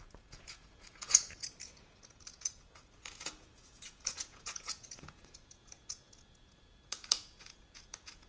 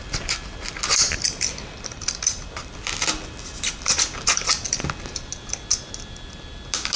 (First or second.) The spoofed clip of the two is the first